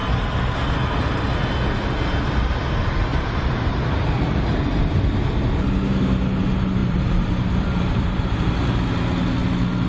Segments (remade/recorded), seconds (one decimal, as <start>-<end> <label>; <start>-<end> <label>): 0.0-3.1 recorded; 3.1-4.8 remade; 4.8-6.8 recorded; 6.8-8.5 remade; 8.5-9.9 recorded